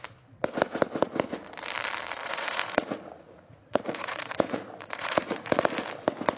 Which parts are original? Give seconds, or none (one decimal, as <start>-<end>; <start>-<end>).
0.0-2.2; 5.5-6.4